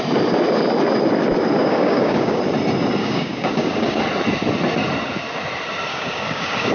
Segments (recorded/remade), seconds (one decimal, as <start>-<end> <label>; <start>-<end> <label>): 0.0-1.6 recorded; 1.6-2.4 remade; 2.4-3.0 recorded; 3.0-4.0 remade; 4.0-5.9 recorded; 5.9-6.7 remade